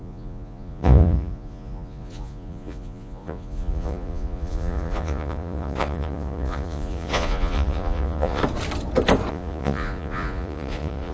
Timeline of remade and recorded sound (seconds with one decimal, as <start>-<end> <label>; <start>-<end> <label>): 0.0-8.4 remade; 8.4-9.3 recorded; 9.3-11.1 remade